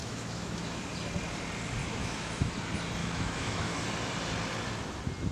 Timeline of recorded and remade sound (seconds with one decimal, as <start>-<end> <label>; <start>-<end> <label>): 0.0-0.8 remade; 0.8-1.8 recorded; 1.8-2.5 remade; 2.5-3.0 recorded; 3.0-3.8 remade; 3.8-5.3 recorded